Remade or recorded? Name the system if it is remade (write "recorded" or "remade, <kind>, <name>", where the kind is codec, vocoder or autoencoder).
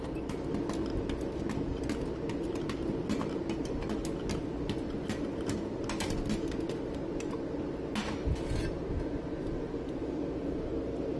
recorded